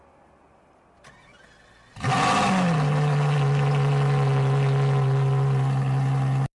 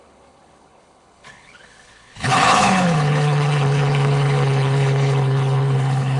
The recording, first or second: first